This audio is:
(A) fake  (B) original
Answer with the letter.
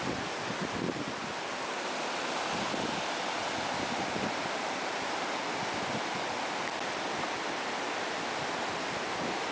B